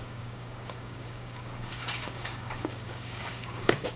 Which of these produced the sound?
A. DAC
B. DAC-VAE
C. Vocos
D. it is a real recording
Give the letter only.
A